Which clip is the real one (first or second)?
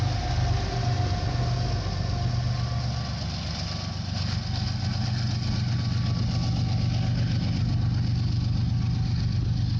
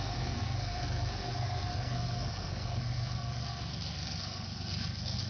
first